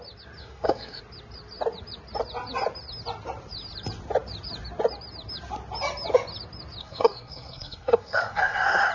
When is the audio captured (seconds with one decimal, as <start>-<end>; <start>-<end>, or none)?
0.0-0.4; 1.0-6.8